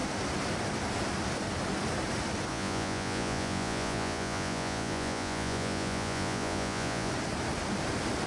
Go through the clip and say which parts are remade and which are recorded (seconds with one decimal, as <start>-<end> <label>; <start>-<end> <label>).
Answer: 0.0-2.5 recorded; 2.5-7.1 remade; 7.1-8.3 recorded